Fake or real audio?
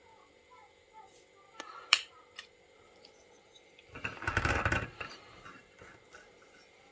real